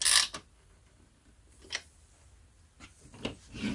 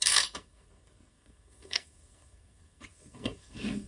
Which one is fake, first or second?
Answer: second